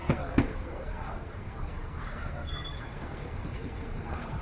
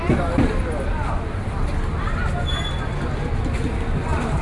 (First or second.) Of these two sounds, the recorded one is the second